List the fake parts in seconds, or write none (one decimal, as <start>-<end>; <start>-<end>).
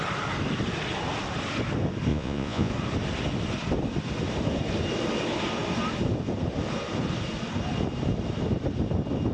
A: 2.1-2.7